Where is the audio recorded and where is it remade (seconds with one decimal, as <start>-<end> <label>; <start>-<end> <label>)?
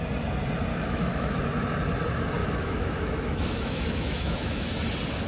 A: 0.0-0.7 recorded; 0.7-1.4 remade; 1.4-2.4 recorded; 2.4-4.7 remade; 4.7-5.3 recorded